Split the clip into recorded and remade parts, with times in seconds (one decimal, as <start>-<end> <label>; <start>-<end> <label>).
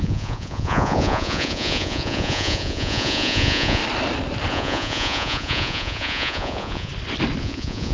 0.0-3.8 remade; 3.8-4.5 recorded; 4.5-6.9 remade; 6.9-7.4 recorded; 7.4-7.9 remade